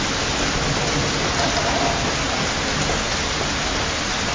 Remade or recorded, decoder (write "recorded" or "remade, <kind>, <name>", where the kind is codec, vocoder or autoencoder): recorded